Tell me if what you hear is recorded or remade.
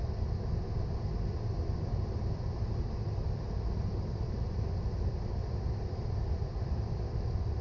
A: recorded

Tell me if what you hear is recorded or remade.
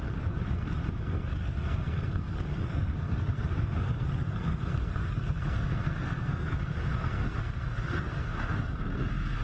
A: remade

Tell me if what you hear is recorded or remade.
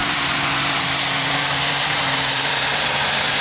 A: remade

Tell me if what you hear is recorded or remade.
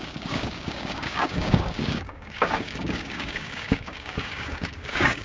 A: remade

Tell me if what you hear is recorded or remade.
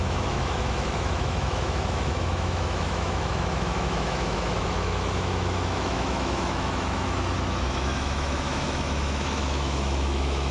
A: remade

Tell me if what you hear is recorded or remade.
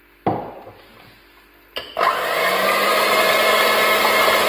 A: recorded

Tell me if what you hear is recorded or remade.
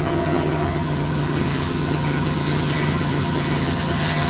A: remade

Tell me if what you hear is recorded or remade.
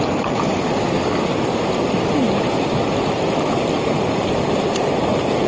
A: recorded